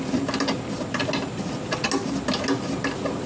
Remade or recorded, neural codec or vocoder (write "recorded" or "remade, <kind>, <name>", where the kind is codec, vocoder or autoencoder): recorded